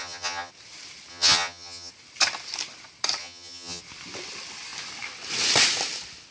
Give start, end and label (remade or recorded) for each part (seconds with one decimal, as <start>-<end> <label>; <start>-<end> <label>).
0.0-0.5 remade; 0.5-1.1 recorded; 1.1-1.9 remade; 1.9-3.2 recorded; 3.2-3.8 remade; 3.8-6.3 recorded